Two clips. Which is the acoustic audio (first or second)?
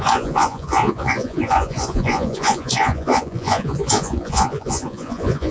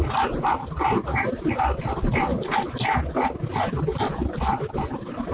second